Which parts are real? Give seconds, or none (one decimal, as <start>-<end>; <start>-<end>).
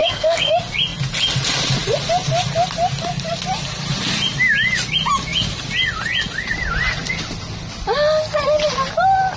0.5-9.4